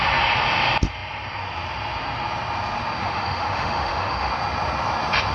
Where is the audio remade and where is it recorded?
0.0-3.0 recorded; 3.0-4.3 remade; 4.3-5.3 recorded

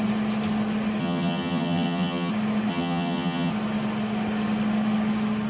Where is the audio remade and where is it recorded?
0.0-1.0 recorded; 1.0-2.3 remade; 2.3-2.7 recorded; 2.7-3.5 remade; 3.5-5.5 recorded

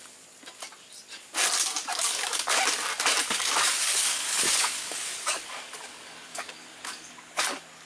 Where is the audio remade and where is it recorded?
0.0-1.9 recorded; 1.9-2.6 remade; 2.6-3.2 recorded; 3.2-7.4 remade; 7.4-7.9 recorded

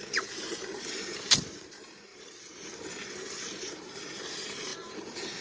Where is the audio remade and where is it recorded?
0.0-5.4 remade

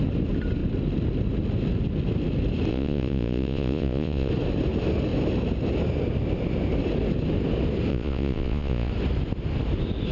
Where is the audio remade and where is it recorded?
0.0-2.7 recorded; 2.7-4.3 remade; 4.3-7.9 recorded; 7.9-8.9 remade; 8.9-10.1 recorded